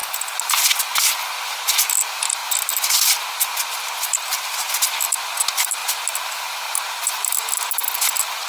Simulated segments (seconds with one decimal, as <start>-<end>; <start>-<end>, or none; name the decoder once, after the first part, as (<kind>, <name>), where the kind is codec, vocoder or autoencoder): none